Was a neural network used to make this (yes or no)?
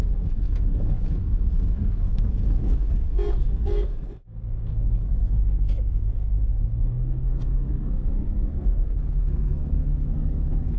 yes